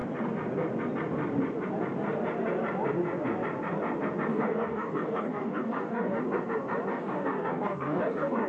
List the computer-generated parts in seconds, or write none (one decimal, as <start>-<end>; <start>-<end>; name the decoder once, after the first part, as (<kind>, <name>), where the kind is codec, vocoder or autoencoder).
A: 4.3-6.2 (codec, DAC); 6.9-8.5